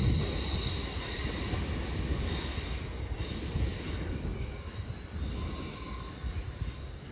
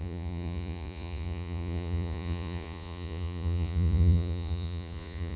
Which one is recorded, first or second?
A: first